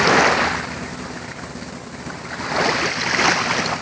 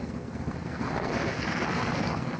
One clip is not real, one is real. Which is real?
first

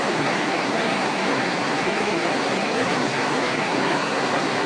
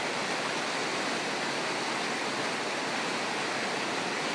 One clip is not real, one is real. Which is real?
second